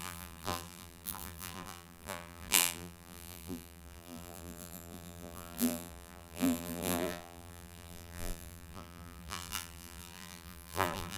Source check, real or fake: fake